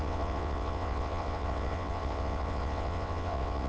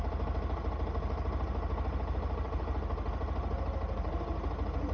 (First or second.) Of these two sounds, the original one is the second